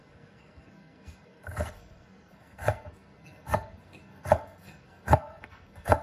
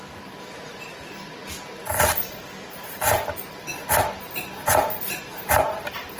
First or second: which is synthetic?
first